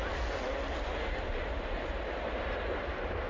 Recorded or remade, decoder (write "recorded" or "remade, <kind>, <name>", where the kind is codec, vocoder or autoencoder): recorded